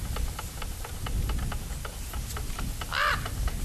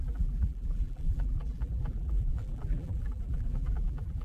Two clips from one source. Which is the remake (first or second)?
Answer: second